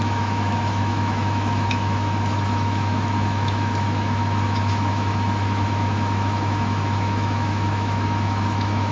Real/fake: fake